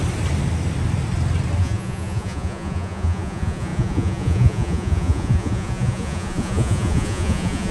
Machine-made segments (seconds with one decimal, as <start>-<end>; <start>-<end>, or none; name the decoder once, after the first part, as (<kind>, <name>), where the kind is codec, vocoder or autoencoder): 1.6-7.7 (vocoder, Vocos)